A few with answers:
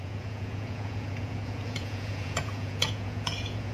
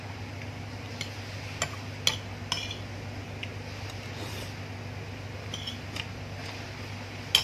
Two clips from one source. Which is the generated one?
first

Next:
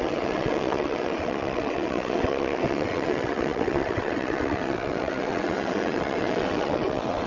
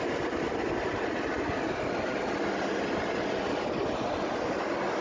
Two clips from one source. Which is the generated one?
first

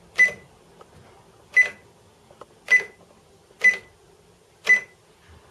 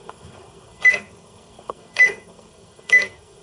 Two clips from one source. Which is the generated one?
second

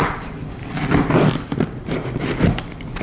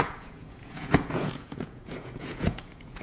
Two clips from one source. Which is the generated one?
second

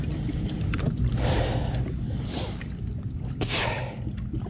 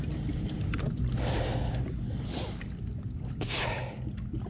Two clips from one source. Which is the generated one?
first